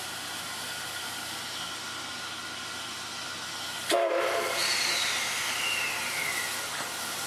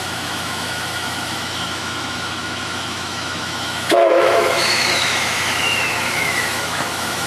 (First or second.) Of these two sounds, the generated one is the second